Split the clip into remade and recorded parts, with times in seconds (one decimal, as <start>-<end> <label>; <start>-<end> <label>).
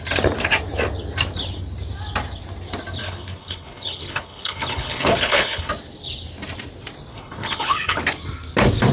0.0-3.0 recorded; 3.0-5.7 remade; 5.7-7.1 recorded; 7.1-8.0 remade; 8.0-8.9 recorded